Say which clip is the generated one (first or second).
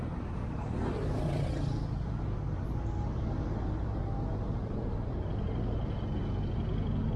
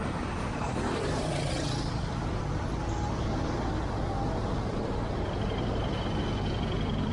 second